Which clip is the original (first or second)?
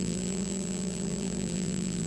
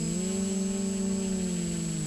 second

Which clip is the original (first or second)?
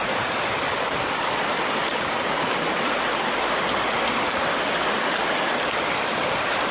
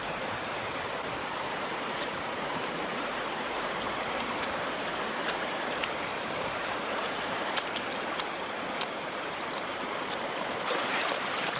first